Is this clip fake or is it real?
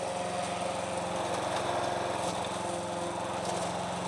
real